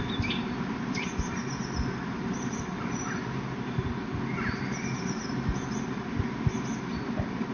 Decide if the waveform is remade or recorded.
recorded